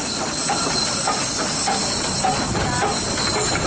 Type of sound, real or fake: real